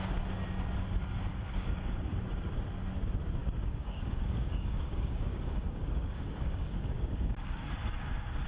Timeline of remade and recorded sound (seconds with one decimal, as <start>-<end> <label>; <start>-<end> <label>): 0.0-1.3 recorded; 1.3-2.2 remade; 2.2-3.4 recorded; 3.4-7.7 remade; 7.7-8.5 recorded